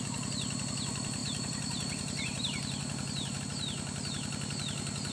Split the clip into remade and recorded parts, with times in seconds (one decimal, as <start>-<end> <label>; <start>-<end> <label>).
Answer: 0.0-1.2 recorded; 1.2-3.4 remade; 3.4-5.1 recorded